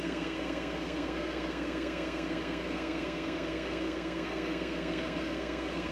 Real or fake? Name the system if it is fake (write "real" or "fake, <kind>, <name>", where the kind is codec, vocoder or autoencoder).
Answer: fake, codec, SNAC